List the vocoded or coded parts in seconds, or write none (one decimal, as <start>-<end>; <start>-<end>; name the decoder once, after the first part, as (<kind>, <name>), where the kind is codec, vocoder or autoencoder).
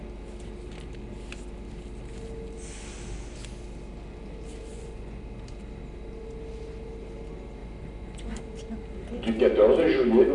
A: 4.7-5.2 (vocoder, Vocos); 7.6-8.4